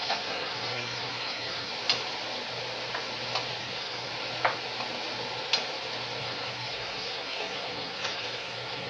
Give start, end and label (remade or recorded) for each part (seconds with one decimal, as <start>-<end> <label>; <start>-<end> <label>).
0.0-1.7 remade; 1.7-3.6 recorded; 3.6-4.1 remade; 4.1-6.2 recorded; 6.2-8.9 remade